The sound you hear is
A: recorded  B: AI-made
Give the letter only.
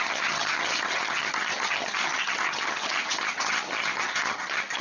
B